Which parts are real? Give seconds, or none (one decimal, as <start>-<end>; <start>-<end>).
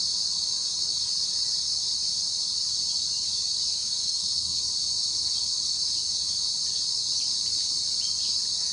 0.0-4.0; 4.6-8.7